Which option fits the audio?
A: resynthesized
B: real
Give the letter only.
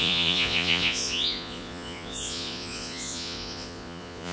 A